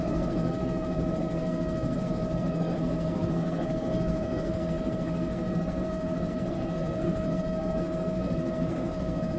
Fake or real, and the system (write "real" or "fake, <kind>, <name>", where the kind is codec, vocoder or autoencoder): fake, codec, SNAC